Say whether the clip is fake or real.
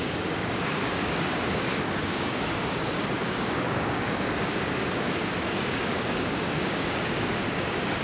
fake